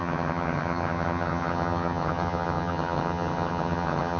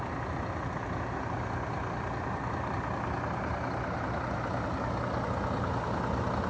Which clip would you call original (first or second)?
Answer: second